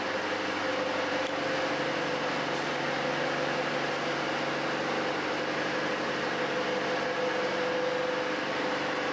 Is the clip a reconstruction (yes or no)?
no